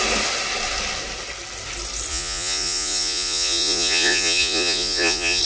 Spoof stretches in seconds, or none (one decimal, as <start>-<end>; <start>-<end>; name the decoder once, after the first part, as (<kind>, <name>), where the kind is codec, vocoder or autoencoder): 2.1-5.4 (vocoder, Vocos)